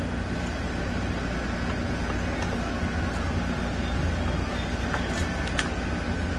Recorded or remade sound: recorded